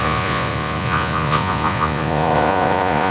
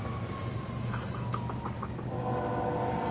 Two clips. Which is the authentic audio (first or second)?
second